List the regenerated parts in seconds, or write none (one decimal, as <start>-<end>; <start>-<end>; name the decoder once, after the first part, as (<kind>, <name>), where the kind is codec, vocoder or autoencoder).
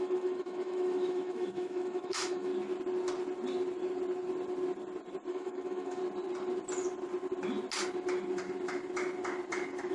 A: 0.0-2.5 (autoencoder, DAC-VAE); 5.3-6.0